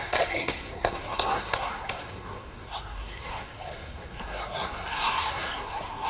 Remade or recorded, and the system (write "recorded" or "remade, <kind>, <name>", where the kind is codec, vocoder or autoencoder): remade, codec, SNAC